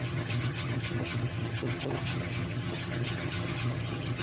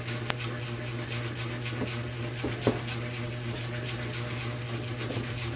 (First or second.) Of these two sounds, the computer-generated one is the first